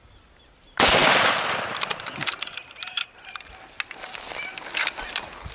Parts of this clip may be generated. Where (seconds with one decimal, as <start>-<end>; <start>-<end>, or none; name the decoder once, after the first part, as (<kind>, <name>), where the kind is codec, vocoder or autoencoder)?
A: none